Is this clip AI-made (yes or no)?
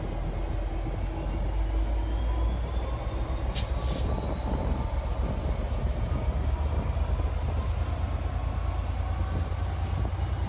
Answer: no